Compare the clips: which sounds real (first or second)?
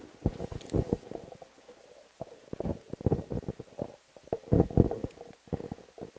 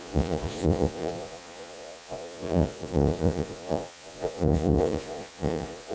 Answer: first